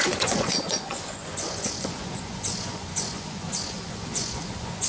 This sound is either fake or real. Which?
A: fake